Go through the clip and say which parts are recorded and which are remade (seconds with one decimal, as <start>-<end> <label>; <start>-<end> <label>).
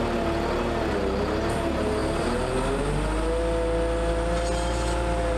0.0-5.4 recorded